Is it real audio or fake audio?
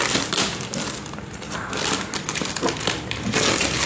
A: real